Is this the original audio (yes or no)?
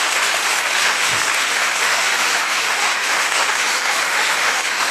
no